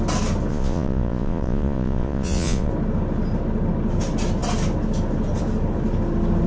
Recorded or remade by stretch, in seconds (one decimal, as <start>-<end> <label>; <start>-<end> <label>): 0.0-0.5 recorded; 0.5-2.7 remade; 2.7-6.5 recorded